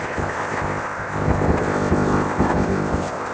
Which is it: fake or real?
fake